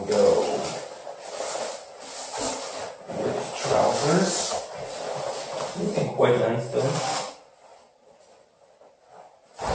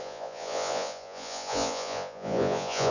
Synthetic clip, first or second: second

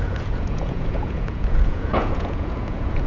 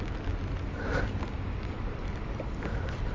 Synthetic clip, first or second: first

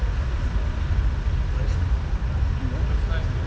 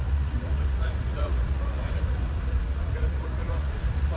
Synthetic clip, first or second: second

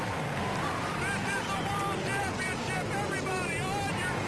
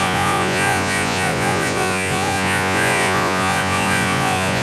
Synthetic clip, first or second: second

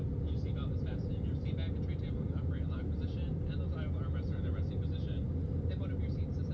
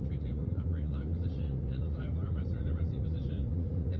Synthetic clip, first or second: second